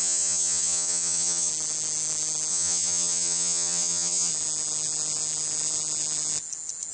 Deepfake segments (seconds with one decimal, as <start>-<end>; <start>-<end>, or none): 0.0-1.5; 2.5-4.3